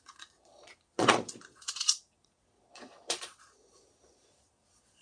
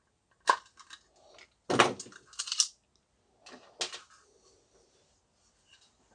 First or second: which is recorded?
second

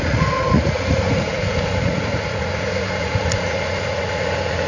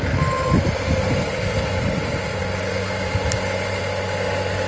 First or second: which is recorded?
second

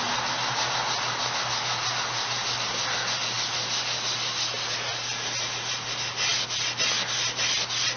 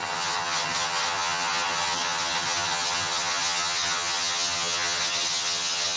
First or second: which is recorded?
first